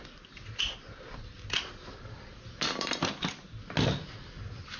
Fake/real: real